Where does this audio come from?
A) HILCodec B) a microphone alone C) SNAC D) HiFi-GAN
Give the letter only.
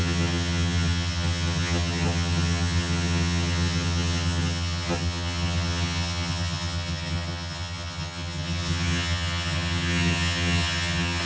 D